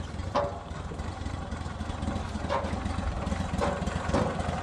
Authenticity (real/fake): real